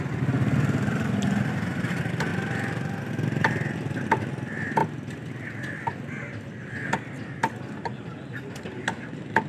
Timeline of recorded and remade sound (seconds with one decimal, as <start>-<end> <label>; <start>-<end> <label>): 0.0-9.5 recorded

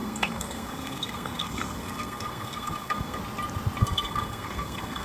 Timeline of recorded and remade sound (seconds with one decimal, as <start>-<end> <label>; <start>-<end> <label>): 0.0-3.2 remade; 3.2-3.8 recorded; 3.8-5.0 remade